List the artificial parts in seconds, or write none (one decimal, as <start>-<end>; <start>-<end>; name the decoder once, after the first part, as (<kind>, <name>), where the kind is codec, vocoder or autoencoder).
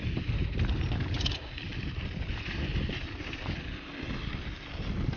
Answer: none